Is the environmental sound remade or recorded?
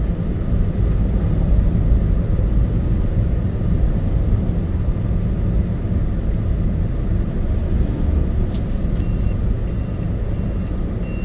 recorded